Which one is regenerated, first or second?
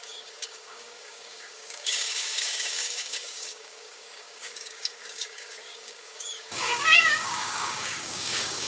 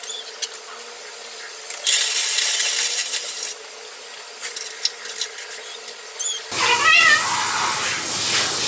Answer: first